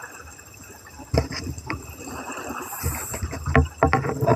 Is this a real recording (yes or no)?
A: yes